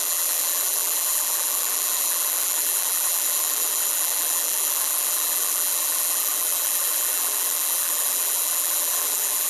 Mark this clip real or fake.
fake